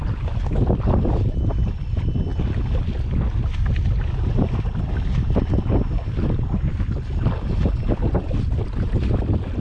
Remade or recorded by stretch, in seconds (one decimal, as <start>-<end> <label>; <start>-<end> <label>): 0.0-9.6 recorded